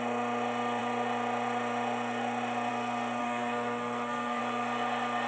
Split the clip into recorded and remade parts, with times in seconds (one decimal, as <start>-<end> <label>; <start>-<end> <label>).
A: 0.0-3.2 recorded; 3.2-4.4 remade; 4.4-5.3 recorded